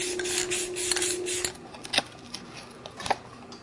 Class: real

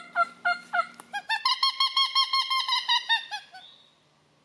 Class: real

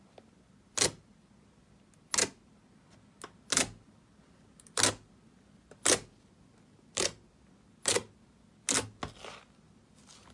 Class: real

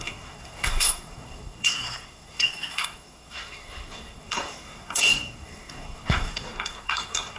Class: fake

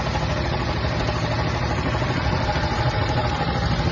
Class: real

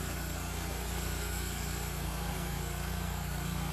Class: fake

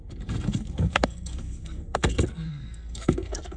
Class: fake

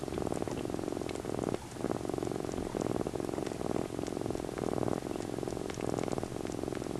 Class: real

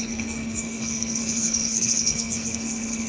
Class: fake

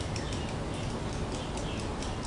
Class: real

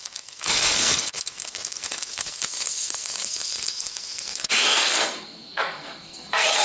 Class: fake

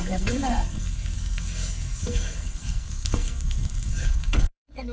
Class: fake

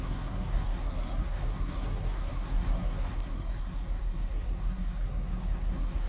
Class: fake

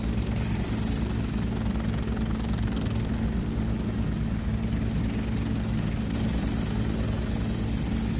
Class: real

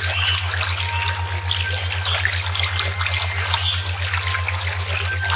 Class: real